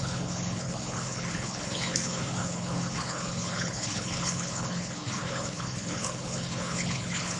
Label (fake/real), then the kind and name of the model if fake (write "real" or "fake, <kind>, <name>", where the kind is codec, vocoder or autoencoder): fake, codec, HILCodec